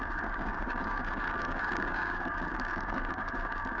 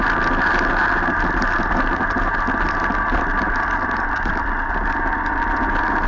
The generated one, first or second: first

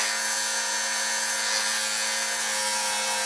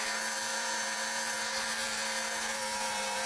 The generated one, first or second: second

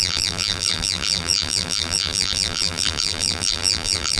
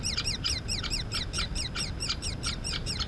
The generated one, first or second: first